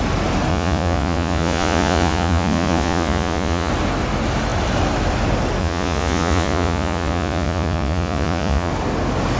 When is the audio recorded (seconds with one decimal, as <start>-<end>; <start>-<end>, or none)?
0.0-0.5; 3.7-5.6; 8.7-9.4